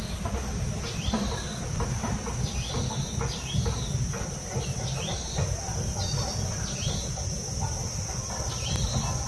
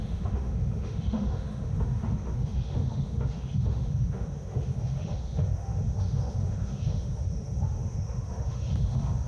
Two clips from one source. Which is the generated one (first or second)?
second